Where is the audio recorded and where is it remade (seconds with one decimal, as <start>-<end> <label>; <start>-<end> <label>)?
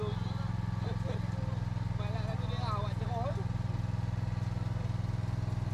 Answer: 0.0-5.7 recorded